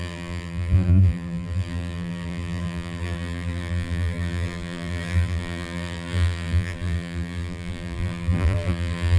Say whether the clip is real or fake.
fake